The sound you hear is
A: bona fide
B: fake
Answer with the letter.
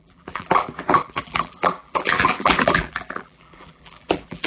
B